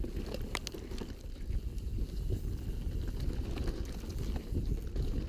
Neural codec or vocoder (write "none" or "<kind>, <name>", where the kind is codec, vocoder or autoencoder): none